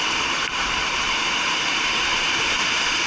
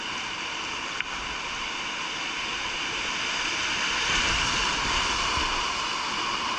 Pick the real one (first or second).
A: second